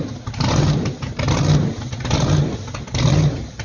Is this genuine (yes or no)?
yes